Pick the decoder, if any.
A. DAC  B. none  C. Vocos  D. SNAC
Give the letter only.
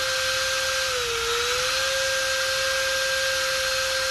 B